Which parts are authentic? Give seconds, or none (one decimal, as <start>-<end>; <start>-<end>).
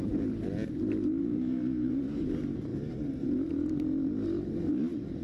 0.0-1.2; 1.9-5.2